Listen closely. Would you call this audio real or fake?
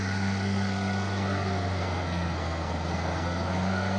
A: fake